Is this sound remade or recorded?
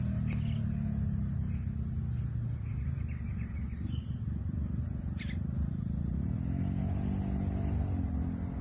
recorded